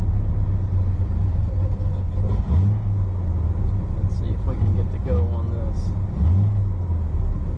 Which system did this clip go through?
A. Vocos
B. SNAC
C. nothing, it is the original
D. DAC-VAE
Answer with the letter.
C